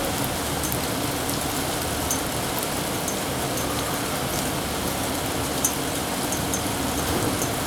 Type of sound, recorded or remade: recorded